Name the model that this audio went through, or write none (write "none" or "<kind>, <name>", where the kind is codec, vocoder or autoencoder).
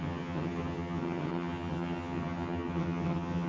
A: vocoder, HiFi-GAN